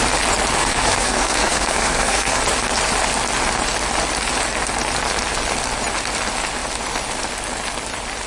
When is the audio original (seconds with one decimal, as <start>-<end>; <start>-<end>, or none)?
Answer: 0.0-0.6; 2.4-8.3